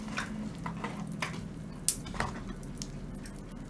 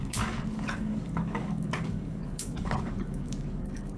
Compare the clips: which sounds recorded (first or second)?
first